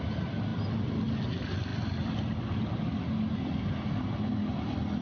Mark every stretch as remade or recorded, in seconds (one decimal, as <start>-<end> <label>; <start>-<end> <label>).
0.0-5.0 recorded